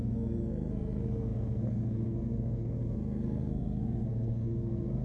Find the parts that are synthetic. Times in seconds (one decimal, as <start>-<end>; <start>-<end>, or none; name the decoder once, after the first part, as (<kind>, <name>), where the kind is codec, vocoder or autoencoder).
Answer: 0.0-5.0 (codec, SNAC)